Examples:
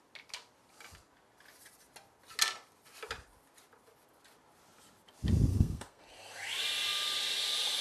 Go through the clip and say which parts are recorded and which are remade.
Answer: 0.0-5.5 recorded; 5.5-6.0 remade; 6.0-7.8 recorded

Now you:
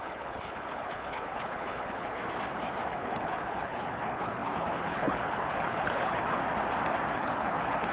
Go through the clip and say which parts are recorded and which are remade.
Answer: 0.0-2.2 remade; 2.2-2.9 recorded; 2.9-6.4 remade; 6.4-7.1 recorded; 7.1-7.9 remade

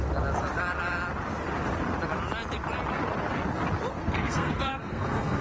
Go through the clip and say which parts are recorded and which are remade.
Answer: 0.0-3.9 recorded; 3.9-5.4 remade

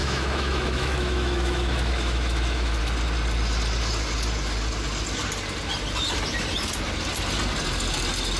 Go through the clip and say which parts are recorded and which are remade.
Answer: 0.0-2.8 remade; 2.8-8.4 recorded

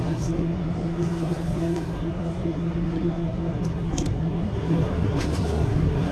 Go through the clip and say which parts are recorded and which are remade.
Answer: 0.0-6.1 remade

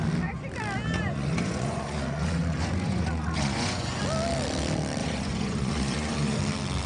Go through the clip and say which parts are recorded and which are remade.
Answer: 0.0-1.0 recorded; 1.0-4.0 remade; 4.0-5.0 recorded; 5.0-6.4 remade; 6.4-6.9 recorded

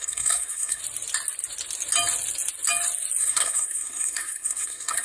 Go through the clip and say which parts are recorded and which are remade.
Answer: 0.0-0.8 remade; 0.8-3.2 recorded; 3.2-5.0 remade

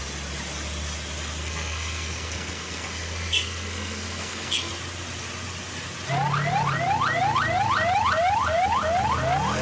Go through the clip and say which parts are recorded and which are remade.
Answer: 0.0-1.4 recorded; 1.4-4.7 remade; 4.7-9.6 recorded